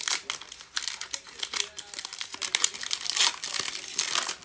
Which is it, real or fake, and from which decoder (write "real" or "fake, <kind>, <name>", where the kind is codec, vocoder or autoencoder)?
real